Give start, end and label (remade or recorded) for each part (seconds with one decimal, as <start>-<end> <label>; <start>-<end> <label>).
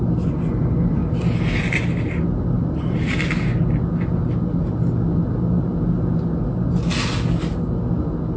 0.0-8.4 recorded